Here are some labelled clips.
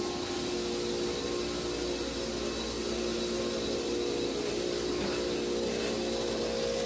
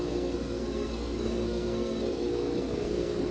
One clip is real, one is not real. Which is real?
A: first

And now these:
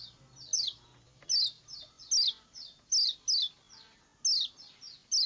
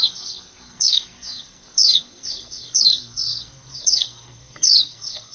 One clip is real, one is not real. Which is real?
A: first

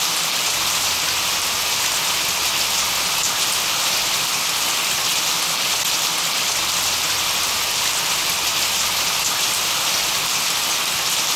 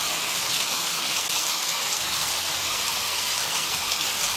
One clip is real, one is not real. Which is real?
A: first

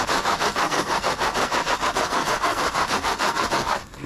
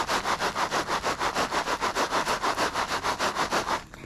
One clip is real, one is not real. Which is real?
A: second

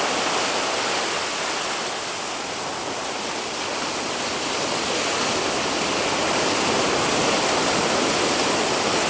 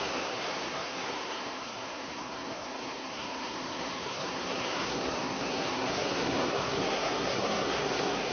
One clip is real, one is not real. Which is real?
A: first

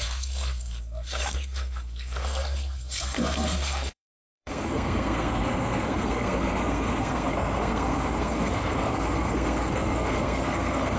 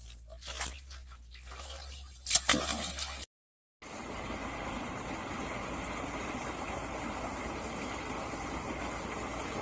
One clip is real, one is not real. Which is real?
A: second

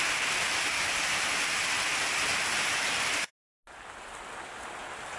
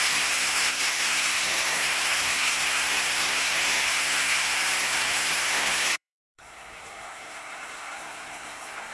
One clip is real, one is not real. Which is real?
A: first